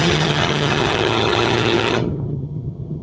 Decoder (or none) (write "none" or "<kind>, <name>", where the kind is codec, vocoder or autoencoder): vocoder, HiFi-GAN